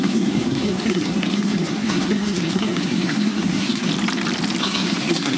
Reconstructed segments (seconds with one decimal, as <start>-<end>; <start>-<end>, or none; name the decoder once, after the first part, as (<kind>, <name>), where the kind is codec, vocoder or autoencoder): 0.0-3.9 (codec, SNAC); 4.6-5.4